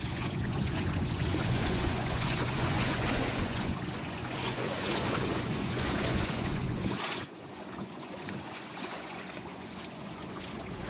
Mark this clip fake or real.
fake